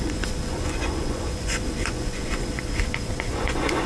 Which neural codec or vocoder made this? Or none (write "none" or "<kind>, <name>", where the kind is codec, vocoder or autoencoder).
vocoder, Vocos